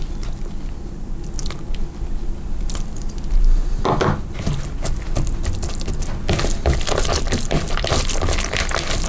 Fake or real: real